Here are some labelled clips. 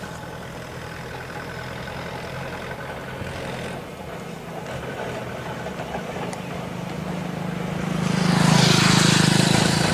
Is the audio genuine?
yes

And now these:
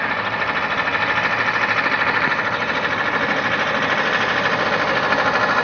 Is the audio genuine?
yes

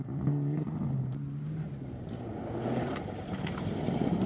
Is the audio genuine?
yes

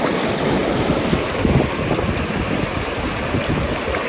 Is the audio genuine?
no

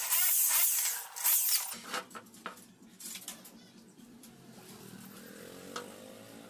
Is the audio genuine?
yes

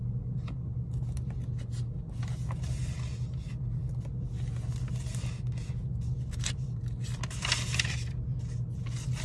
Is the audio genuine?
yes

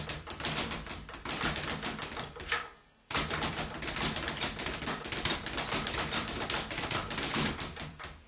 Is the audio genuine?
no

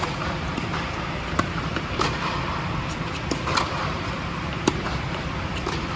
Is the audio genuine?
no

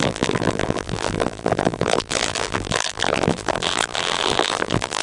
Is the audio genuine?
no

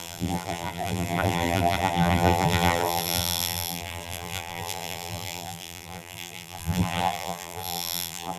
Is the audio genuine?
no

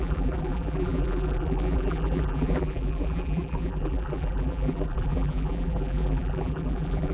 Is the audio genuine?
no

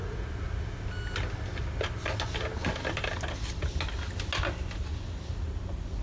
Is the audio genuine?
yes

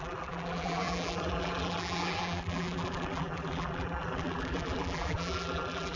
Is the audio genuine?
no